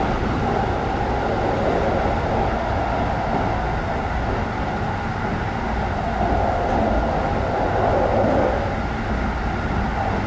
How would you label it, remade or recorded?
recorded